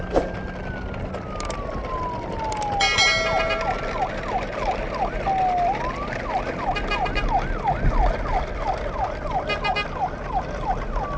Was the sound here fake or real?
real